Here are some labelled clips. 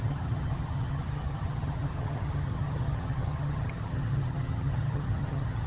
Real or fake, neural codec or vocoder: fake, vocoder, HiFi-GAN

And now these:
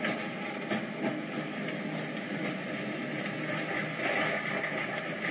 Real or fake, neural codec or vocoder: real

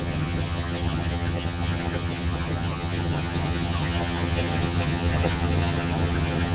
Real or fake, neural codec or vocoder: fake, vocoder, HiFi-GAN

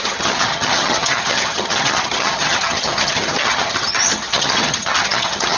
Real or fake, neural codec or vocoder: fake, vocoder, HiFi-GAN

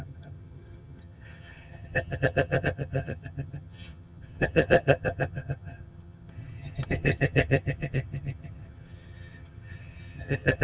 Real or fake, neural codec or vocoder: fake, vocoder, HiFi-GAN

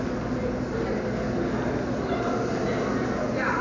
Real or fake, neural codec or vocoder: real